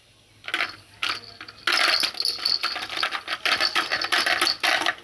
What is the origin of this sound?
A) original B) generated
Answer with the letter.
A